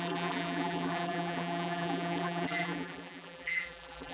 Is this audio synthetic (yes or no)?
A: yes